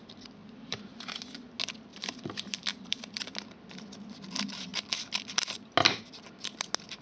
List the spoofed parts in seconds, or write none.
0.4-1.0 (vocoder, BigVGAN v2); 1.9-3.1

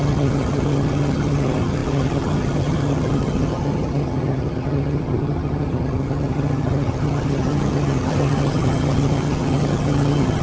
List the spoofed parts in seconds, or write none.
0.0-10.4 (vocoder, HiFi-GAN)

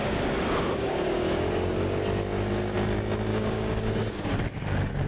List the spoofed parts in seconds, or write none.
0.0-1.5 (codec, DAC); 3.3-4.3